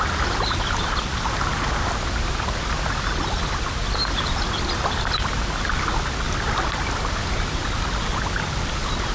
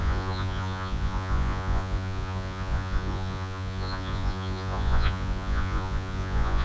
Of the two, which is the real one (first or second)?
first